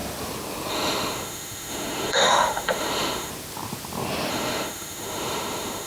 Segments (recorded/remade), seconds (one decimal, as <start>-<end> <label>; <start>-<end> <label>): 0.0-0.7 recorded; 0.7-3.3 remade; 3.3-4.3 recorded; 4.3-5.9 remade